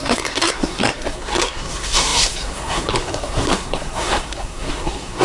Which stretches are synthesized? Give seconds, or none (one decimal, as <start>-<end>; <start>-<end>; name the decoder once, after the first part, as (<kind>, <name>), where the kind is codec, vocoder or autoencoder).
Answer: 0.0-5.2 (codec, SNAC)